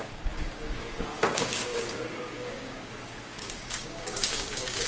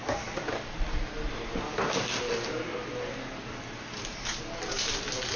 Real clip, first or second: second